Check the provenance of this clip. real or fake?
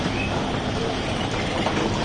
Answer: real